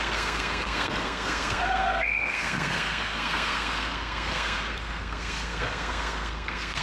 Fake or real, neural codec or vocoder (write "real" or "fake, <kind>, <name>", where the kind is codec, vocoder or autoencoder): fake, codec, SNAC